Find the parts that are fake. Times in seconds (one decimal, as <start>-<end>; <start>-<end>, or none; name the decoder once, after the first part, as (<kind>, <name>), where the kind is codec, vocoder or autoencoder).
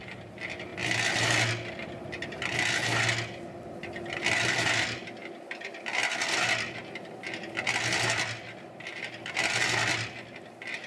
none